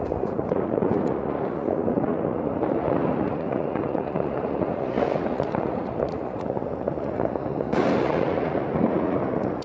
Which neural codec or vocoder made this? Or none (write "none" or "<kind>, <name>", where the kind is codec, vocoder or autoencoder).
vocoder, Vocos